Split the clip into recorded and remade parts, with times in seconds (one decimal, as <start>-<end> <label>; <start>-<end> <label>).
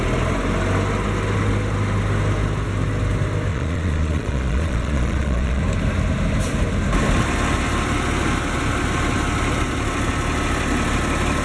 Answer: 0.0-3.5 recorded; 3.5-5.6 remade; 5.6-11.4 recorded